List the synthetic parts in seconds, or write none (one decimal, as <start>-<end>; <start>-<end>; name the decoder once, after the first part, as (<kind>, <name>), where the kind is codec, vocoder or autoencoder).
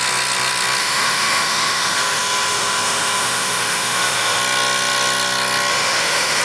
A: 0.8-4.4 (autoencoder, DAC-VAE); 5.7-6.4